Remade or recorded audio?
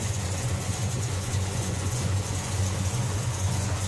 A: remade